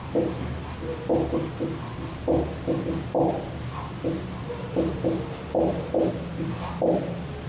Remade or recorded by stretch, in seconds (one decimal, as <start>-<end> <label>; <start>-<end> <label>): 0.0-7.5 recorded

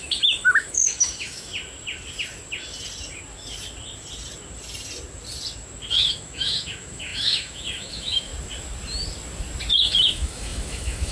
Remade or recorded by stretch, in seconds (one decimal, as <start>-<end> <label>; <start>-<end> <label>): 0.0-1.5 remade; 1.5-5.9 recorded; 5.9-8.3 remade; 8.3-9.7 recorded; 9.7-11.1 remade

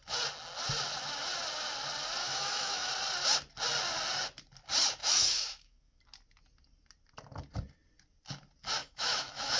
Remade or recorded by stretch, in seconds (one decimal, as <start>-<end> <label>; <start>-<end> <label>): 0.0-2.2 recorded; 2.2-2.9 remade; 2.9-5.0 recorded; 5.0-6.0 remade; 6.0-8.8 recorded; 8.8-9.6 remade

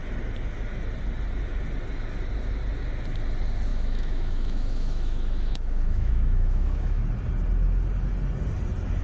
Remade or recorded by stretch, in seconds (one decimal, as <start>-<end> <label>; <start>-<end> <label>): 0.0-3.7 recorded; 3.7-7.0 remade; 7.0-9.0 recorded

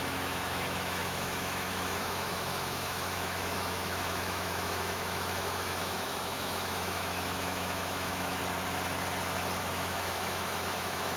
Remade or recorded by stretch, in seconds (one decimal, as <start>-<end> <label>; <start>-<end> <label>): 0.0-8.4 remade; 8.4-9.6 recorded; 9.6-11.2 remade